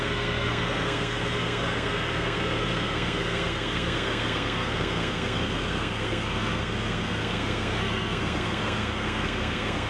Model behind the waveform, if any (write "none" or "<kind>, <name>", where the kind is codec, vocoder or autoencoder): codec, SNAC